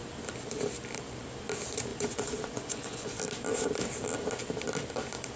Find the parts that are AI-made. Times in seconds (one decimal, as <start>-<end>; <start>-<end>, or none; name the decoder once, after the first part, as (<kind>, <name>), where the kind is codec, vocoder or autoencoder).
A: 1.9-3.2 (vocoder, Vocos)